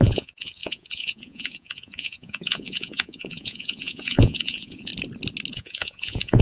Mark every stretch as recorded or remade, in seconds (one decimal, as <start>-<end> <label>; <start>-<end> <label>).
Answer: 0.0-4.9 remade; 4.9-5.5 recorded; 5.5-6.4 remade